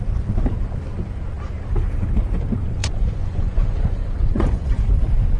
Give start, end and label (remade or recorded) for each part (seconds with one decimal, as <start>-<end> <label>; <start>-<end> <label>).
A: 0.0-2.8 recorded; 2.8-4.9 remade; 4.9-5.4 recorded